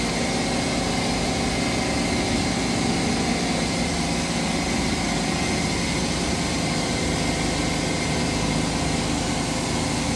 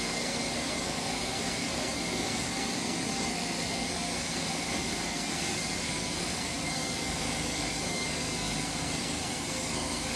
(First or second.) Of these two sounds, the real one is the first